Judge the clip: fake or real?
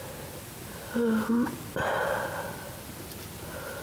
real